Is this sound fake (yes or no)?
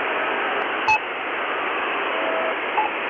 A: no